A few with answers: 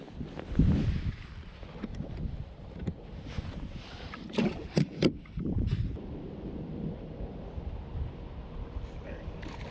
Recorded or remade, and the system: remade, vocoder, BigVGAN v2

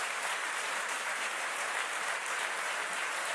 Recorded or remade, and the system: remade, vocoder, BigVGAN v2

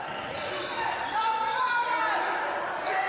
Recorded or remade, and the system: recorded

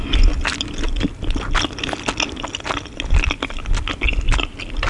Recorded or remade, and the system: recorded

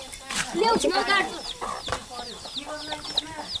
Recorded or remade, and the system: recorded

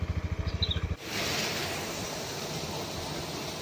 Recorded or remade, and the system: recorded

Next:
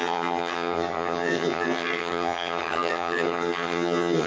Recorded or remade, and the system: remade, vocoder, HiFi-GAN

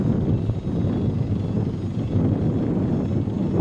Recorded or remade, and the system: recorded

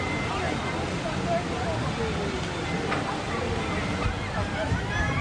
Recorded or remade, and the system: recorded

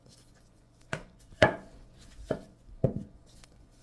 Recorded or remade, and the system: remade, vocoder, Vocos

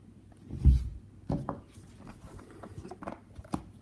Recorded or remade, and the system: recorded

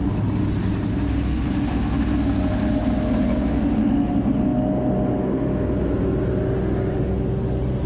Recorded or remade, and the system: recorded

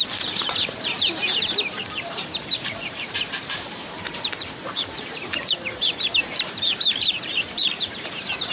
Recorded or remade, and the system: remade, vocoder, BigVGAN v2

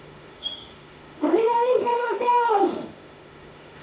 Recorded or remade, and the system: remade, autoencoder, DAC-VAE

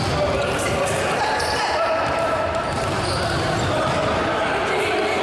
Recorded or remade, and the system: remade, vocoder, BigVGAN v2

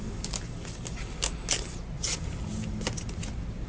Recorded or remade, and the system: recorded